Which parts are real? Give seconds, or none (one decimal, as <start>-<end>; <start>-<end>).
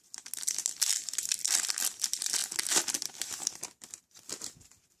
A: 0.0-5.0